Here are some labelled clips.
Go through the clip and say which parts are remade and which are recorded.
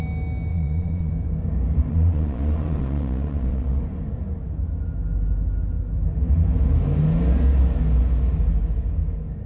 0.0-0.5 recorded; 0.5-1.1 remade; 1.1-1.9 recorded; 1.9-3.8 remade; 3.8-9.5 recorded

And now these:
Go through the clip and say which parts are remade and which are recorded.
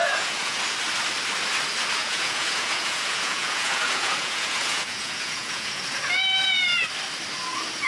0.0-0.6 remade; 0.6-2.0 recorded; 2.0-5.8 remade; 5.8-7.9 recorded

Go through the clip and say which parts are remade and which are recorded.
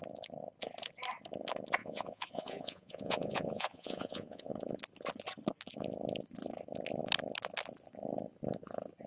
0.0-1.8 recorded; 1.8-4.5 remade; 4.5-9.1 recorded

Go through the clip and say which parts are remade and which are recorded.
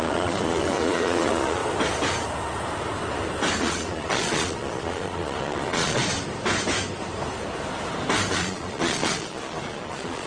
0.0-1.6 remade; 1.6-3.6 recorded; 3.6-6.0 remade; 6.0-8.3 recorded; 8.3-10.3 remade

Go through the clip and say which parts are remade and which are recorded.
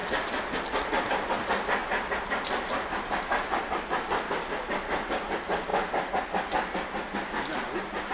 0.0-8.1 recorded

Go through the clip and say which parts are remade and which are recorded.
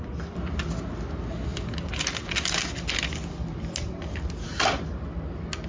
0.0-5.7 recorded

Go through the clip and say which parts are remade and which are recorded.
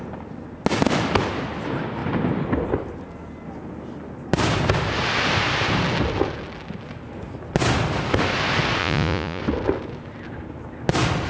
0.0-8.8 recorded; 8.8-9.4 remade; 9.4-11.3 recorded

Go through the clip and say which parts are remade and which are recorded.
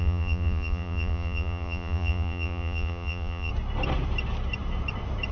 0.0-3.5 remade; 3.5-5.3 recorded